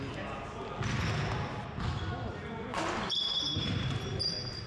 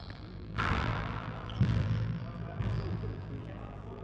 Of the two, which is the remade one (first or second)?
second